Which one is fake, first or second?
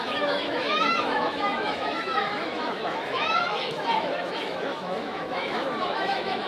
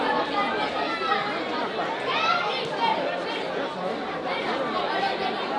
first